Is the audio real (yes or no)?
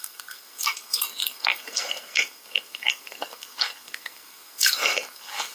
no